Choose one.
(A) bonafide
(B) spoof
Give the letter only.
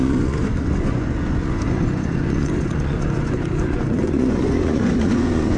B